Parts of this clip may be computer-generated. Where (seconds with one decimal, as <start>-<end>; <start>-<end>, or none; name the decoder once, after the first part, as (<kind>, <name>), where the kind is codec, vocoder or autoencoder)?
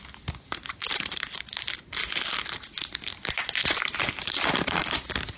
0.0-2.0 (vocoder, BigVGAN v2); 4.2-5.4